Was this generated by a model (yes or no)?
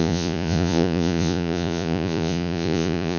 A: yes